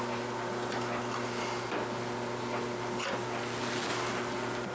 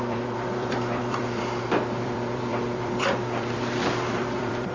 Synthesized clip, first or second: second